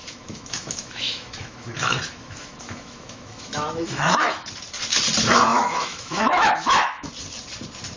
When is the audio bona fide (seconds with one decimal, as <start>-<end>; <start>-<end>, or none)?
4.5-5.5; 7.1-8.0